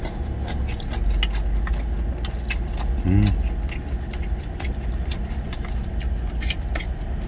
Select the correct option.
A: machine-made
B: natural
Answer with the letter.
B